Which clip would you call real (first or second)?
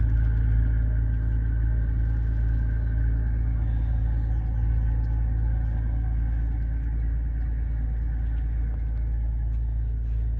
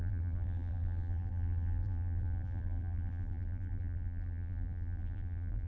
first